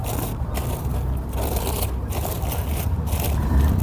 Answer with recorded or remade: recorded